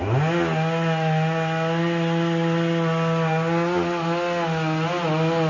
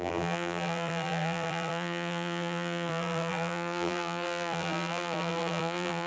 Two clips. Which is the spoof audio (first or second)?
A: second